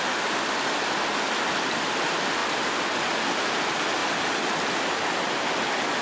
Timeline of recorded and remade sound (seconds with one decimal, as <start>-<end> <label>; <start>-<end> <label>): 0.0-6.0 recorded